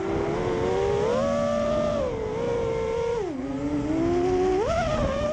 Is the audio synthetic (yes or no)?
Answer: no